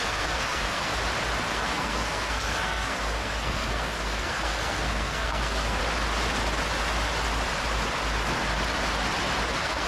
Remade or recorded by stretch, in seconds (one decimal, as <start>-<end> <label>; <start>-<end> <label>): 0.0-0.9 remade; 0.9-1.5 recorded; 1.5-5.8 remade; 5.8-9.5 recorded; 9.5-9.9 remade